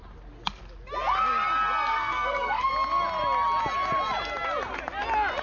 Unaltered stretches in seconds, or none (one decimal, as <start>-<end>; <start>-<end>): 0.0-1.9; 2.7-5.4